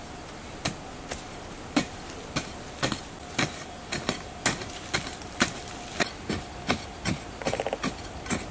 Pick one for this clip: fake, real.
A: real